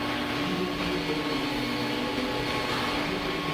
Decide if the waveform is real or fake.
real